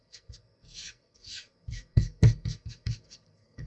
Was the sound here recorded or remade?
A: remade